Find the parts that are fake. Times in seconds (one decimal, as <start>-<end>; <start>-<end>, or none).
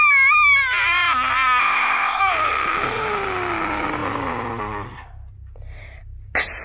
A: 1.6-2.2